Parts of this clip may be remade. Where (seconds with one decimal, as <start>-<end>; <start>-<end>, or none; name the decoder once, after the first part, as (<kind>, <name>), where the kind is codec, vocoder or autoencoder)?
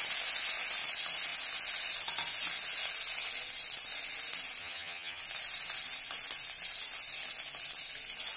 4.6-5.2 (vocoder, HiFi-GAN)